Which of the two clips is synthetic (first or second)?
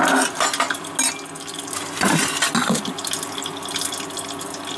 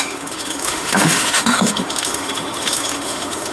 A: second